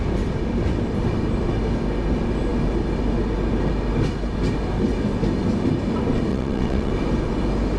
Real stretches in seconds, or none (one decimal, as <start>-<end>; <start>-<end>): 0.0-6.3; 6.9-7.8